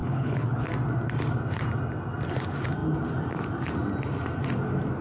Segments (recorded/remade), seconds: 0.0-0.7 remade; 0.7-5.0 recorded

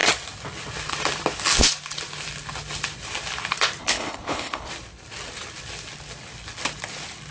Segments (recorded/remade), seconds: 0.0-3.8 recorded; 3.8-4.7 remade; 4.7-7.3 recorded

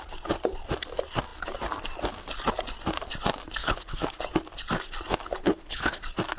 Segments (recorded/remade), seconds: 0.0-3.6 recorded; 3.6-4.2 remade; 4.2-5.4 recorded; 5.4-6.0 remade; 6.0-6.4 recorded

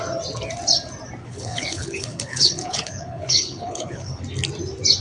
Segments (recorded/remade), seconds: 0.0-1.2 recorded; 1.2-4.2 remade; 4.2-5.0 recorded

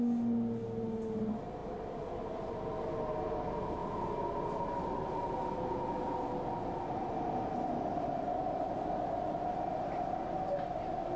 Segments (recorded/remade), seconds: 0.0-11.2 recorded